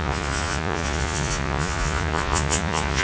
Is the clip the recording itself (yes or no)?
no